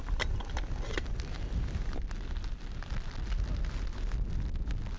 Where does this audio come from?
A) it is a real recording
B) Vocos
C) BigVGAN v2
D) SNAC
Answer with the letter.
A